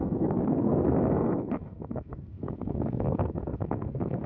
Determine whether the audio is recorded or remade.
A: remade